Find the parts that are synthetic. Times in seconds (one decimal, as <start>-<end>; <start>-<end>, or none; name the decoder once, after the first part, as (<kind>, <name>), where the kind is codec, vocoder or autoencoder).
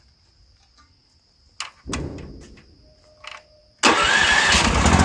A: none